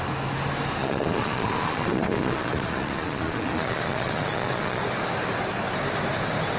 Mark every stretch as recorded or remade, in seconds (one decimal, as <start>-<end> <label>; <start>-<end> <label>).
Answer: 0.0-0.8 recorded; 0.8-4.8 remade; 4.8-6.6 recorded